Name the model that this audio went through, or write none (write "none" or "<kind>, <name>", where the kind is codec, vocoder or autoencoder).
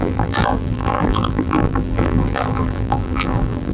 vocoder, BigVGAN v2